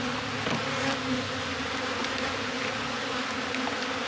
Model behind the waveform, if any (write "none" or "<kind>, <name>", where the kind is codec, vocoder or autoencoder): none